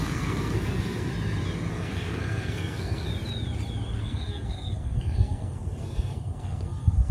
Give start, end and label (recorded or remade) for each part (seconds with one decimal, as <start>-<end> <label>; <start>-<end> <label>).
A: 0.0-1.1 remade; 1.1-1.7 recorded; 1.7-3.1 remade; 3.1-4.0 recorded; 4.0-7.1 remade